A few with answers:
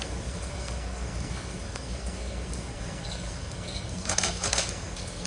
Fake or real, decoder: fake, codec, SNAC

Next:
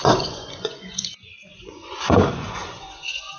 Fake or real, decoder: fake, vocoder, Vocos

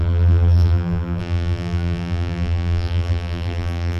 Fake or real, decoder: fake, vocoder, BigVGAN v2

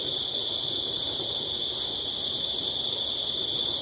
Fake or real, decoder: real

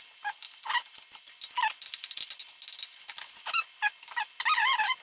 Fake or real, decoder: real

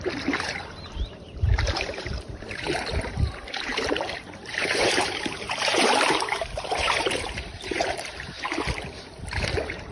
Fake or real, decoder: fake, vocoder, BigVGAN v2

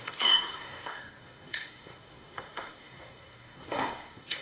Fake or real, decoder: fake, codec, SNAC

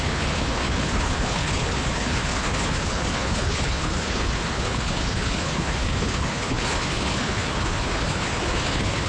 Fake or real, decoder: fake, codec, HILCodec